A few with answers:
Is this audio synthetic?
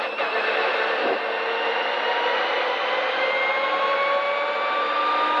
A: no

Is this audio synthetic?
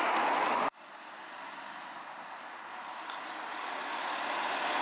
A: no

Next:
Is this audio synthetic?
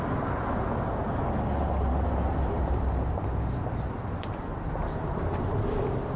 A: no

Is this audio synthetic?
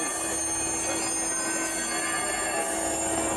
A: no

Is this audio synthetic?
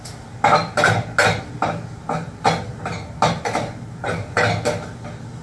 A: no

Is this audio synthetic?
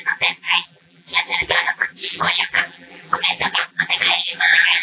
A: yes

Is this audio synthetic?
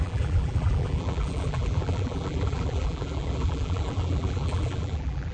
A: yes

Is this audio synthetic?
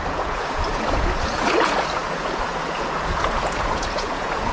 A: yes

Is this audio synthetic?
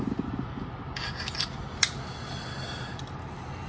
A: no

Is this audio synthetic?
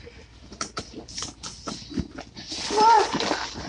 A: yes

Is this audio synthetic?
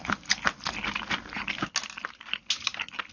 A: no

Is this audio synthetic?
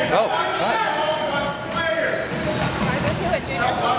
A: no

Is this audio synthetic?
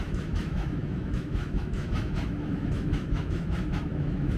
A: yes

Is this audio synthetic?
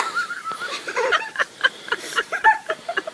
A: yes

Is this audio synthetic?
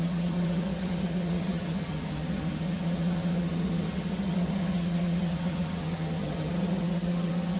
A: yes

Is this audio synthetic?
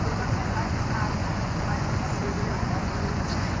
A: yes